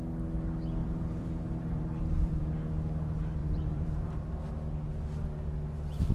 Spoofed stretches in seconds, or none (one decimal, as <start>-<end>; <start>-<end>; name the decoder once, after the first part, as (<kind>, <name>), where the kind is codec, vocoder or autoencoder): 0.8-2.5 (vocoder, BigVGAN v2); 3.4-4.5

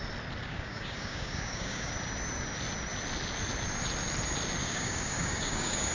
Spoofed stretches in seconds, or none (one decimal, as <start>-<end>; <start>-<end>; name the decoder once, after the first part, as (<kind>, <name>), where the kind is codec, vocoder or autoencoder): 0.4-1.9 (codec, DAC); 4.6-5.9